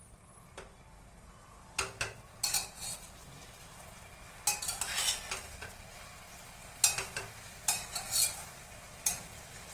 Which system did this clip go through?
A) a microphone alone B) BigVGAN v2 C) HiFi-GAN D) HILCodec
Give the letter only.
A